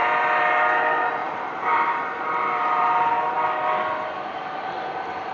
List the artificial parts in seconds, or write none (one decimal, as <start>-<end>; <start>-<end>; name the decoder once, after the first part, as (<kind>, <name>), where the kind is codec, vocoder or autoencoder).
0.0-0.6 (vocoder, BigVGAN v2); 1.2-4.4